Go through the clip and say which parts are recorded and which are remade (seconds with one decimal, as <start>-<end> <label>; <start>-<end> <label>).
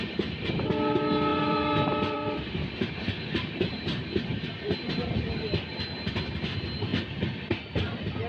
0.0-1.3 recorded; 1.3-5.8 remade; 5.8-8.3 recorded